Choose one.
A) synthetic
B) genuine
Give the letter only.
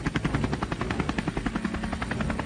B